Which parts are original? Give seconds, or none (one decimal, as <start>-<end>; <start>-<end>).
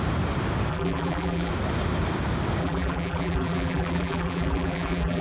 0.0-0.7; 1.5-2.6